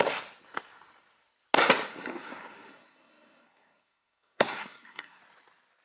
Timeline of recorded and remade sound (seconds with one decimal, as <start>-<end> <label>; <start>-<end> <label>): 0.0-1.9 recorded; 1.9-5.2 remade; 5.2-5.8 recorded